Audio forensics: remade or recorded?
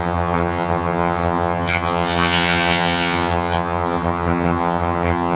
remade